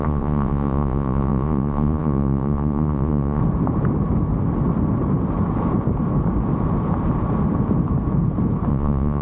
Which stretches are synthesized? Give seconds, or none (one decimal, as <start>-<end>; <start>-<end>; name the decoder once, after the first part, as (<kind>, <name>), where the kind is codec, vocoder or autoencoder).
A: 0.0-3.4 (vocoder, Vocos); 8.7-9.2